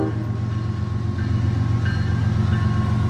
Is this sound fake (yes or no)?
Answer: no